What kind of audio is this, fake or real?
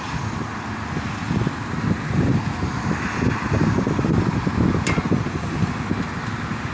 real